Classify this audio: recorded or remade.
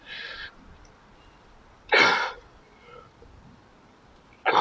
remade